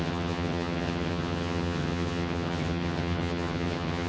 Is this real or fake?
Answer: fake